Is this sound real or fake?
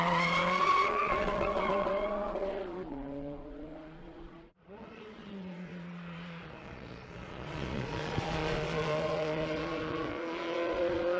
fake